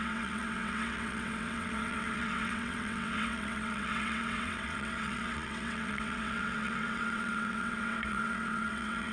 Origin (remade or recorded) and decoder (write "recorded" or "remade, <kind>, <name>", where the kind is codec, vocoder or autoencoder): remade, vocoder, WaveNeXt